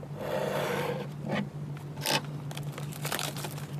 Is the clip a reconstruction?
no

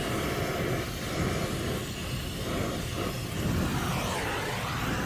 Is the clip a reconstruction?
no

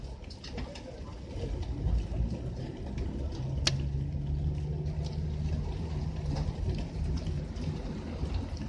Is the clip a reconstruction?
no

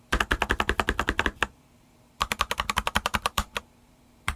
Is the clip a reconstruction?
yes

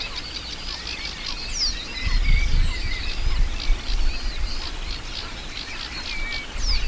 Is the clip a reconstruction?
no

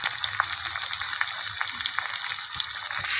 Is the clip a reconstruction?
no